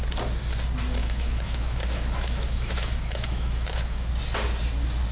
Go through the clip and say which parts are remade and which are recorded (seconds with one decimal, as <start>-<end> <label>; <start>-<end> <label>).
0.0-1.0 recorded; 1.0-4.1 remade; 4.1-5.1 recorded